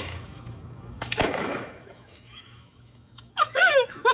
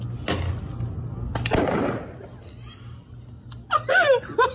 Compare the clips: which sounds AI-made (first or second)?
first